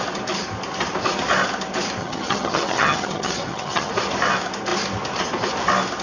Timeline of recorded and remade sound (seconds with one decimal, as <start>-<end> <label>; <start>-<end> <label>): 0.0-2.0 recorded; 2.0-3.9 remade; 3.9-6.0 recorded